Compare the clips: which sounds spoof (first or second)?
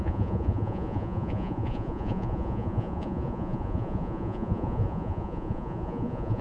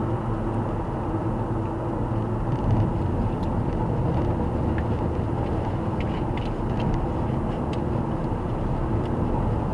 first